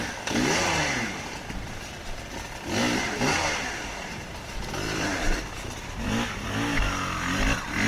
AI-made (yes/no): no